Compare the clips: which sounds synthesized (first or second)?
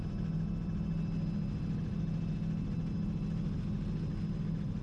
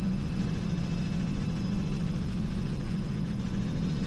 second